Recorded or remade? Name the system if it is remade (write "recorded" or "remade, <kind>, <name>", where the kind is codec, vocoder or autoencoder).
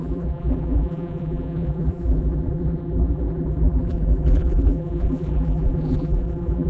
remade, vocoder, BigVGAN v2